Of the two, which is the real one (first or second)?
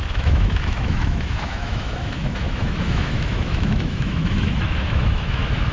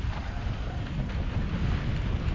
second